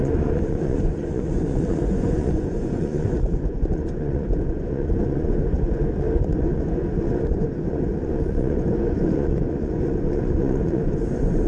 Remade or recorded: remade